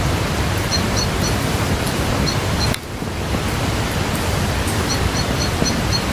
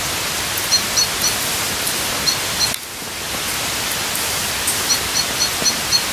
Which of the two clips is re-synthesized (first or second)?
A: first